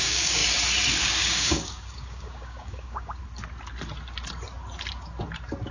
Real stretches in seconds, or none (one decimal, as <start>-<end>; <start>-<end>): 0.4-1.0; 3.2-5.7